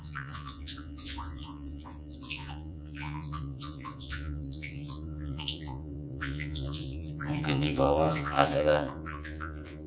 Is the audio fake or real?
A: fake